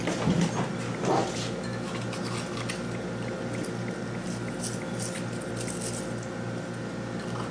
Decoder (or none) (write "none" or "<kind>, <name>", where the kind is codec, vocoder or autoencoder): none